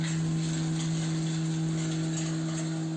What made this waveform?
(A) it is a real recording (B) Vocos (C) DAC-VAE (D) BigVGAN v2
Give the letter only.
A